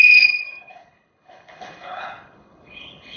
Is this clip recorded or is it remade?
remade